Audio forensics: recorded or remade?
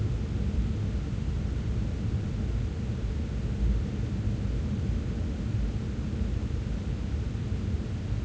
recorded